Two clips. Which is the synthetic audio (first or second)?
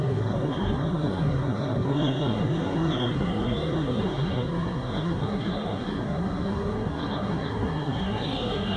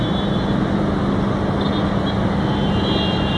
first